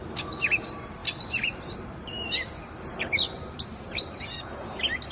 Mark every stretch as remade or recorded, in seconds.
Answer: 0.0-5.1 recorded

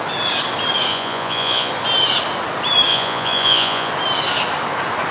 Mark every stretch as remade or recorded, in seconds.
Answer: 0.0-0.9 recorded; 0.9-1.7 remade; 1.7-2.9 recorded; 2.9-3.9 remade; 3.9-5.1 recorded

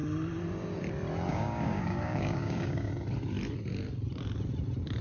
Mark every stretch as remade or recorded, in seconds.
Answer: 0.0-1.3 recorded; 1.3-2.9 remade; 2.9-5.0 recorded

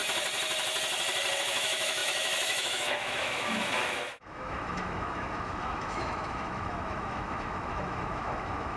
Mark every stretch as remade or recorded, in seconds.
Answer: 0.0-1.4 recorded; 1.4-8.8 remade

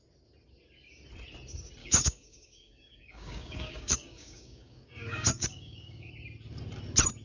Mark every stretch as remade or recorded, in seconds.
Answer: 0.0-1.8 recorded; 1.8-6.1 remade; 6.1-7.2 recorded